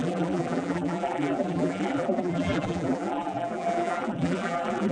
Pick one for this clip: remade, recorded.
remade